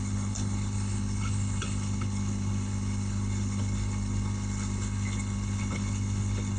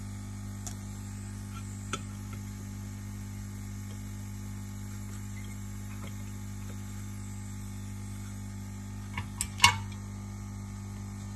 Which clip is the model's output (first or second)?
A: first